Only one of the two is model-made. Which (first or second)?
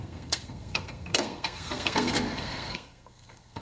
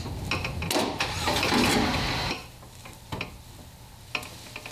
first